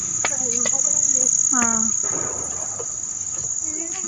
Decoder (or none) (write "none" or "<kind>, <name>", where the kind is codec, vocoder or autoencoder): none